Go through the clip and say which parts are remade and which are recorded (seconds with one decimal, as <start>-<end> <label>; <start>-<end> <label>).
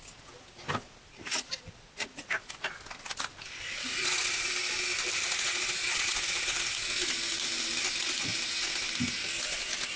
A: 0.0-1.1 recorded; 1.1-2.3 remade; 2.3-3.9 recorded; 3.9-4.5 remade; 4.5-5.2 recorded; 5.2-6.6 remade; 6.6-10.0 recorded